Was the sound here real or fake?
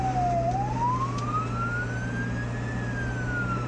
real